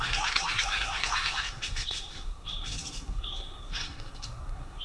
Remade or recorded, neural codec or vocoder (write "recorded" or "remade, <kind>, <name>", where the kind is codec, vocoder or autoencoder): remade, codec, SNAC